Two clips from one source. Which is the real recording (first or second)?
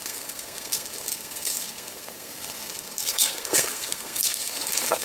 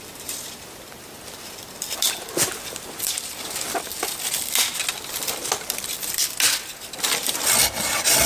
second